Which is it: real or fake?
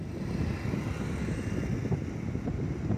real